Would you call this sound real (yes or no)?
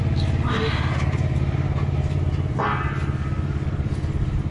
yes